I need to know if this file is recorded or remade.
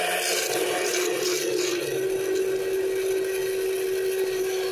recorded